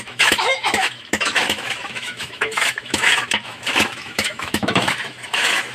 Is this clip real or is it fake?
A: fake